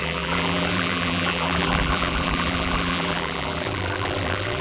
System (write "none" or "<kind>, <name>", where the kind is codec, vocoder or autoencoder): vocoder, BigVGAN v2